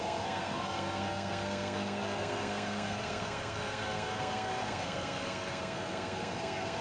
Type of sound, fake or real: fake